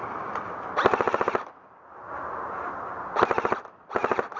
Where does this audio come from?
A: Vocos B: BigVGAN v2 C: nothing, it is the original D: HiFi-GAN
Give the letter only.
C